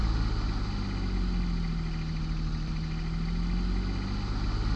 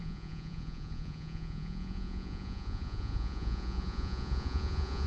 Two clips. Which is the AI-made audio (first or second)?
second